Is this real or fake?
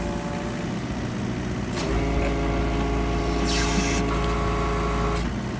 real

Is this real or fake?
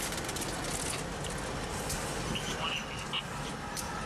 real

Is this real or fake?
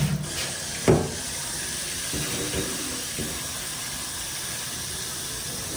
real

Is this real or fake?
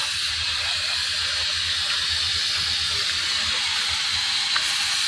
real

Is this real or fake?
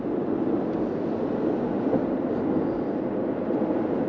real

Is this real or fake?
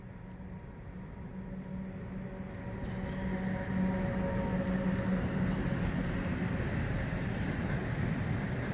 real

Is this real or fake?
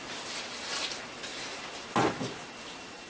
real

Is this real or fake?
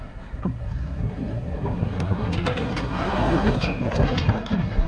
fake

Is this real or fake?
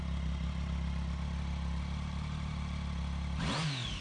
real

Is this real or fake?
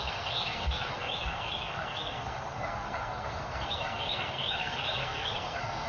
fake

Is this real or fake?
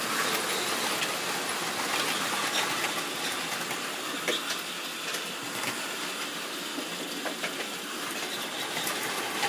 real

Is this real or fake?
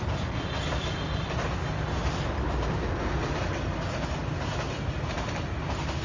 real